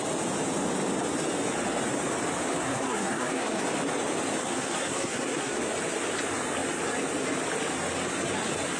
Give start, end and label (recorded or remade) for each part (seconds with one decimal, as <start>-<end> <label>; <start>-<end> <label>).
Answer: 0.0-2.5 recorded; 2.5-3.6 remade; 3.6-4.4 recorded; 4.4-5.6 remade; 5.6-8.8 recorded